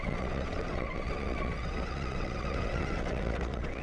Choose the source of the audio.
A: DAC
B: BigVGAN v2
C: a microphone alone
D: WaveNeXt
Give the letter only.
D